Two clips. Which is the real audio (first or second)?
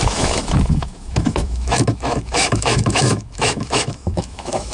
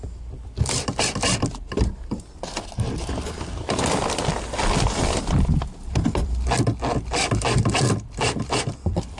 second